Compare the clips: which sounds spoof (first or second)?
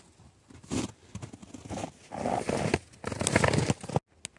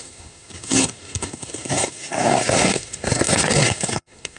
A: second